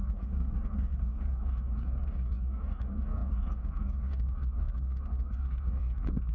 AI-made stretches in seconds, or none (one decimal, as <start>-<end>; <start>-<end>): 0.0-6.3